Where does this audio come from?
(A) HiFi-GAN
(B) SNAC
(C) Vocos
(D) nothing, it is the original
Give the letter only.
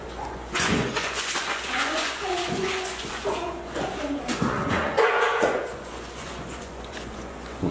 C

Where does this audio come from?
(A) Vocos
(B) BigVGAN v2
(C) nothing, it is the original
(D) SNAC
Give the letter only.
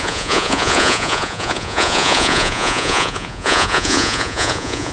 A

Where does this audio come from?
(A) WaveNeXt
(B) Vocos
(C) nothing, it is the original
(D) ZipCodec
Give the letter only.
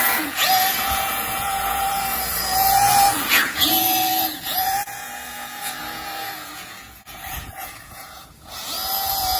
B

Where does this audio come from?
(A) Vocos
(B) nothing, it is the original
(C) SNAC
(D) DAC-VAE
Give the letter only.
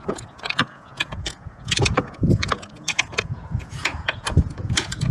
A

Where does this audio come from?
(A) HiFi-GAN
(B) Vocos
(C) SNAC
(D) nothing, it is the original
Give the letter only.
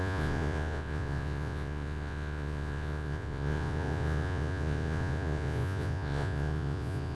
B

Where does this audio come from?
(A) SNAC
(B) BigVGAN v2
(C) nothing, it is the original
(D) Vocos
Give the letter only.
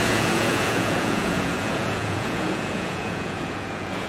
D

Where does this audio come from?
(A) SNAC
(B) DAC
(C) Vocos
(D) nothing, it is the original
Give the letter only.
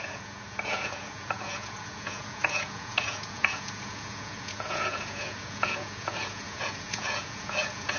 C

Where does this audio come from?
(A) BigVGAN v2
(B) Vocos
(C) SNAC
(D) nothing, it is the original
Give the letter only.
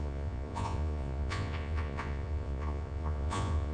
B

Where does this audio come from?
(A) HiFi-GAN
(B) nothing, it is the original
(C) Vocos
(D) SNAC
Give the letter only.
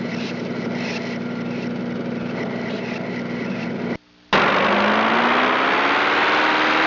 B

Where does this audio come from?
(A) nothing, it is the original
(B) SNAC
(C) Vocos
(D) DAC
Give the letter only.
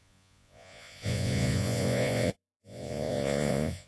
C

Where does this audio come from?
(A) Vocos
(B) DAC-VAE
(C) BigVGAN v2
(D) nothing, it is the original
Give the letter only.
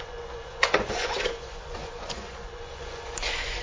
A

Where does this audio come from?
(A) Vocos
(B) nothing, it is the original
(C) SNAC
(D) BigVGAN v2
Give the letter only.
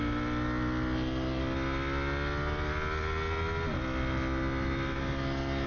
B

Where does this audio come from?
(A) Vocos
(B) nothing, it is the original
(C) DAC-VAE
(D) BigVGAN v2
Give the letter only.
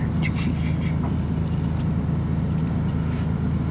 B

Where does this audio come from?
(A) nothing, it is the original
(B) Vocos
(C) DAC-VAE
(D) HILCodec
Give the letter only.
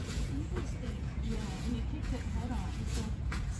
B